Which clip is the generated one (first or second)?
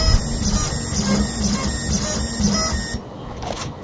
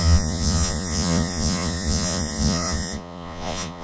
second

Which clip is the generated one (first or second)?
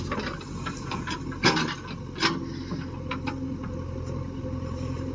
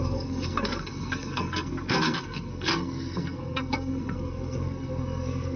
second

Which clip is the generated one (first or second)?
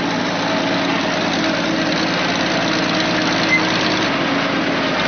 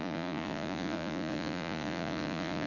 second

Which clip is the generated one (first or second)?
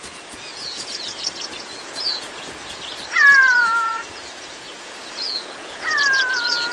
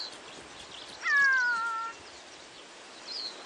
first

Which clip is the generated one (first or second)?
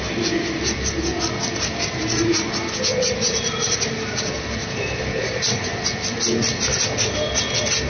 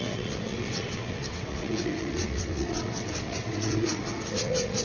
second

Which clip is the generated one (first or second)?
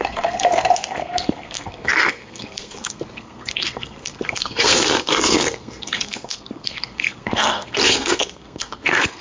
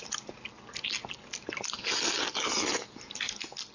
first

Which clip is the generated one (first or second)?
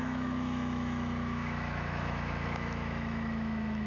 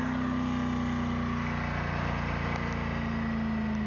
first